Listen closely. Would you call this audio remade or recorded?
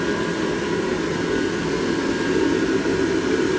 recorded